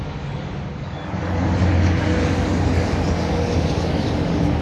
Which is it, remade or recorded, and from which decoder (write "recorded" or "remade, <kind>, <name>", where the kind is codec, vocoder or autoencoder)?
remade, codec, DAC